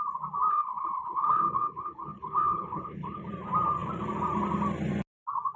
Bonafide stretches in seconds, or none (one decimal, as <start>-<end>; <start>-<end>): 0.0-0.5; 3.3-5.6